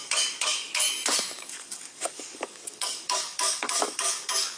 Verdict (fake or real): fake